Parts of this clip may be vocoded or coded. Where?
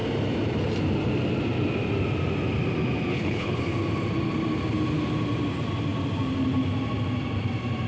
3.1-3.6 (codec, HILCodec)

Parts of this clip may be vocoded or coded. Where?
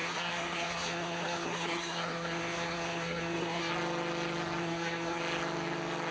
0.0-3.7 (codec, SNAC); 4.6-5.2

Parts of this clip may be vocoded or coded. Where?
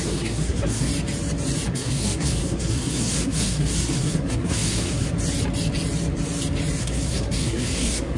0.0-0.9 (codec, SNAC); 1.7-5.1; 6.8-8.2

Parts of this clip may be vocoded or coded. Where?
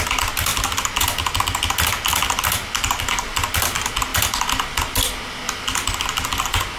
none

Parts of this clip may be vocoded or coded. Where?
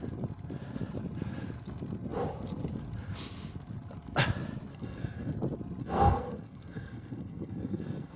4.7-5.3 (codec, SNAC); 5.8-8.2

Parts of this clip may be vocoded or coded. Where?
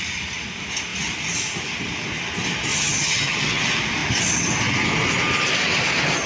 2.7-3.6 (vocoder, HiFi-GAN)